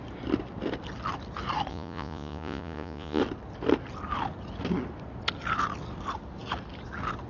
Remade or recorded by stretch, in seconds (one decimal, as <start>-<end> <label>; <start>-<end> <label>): 0.0-1.7 recorded; 1.7-3.2 remade; 3.2-7.3 recorded